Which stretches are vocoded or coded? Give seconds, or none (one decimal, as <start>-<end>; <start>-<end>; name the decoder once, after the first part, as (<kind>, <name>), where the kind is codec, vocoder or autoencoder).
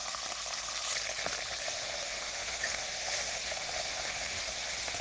1.6-5.0 (autoencoder, DAC-VAE)